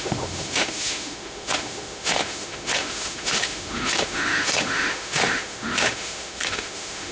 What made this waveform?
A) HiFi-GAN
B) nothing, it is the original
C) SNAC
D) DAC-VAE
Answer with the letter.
D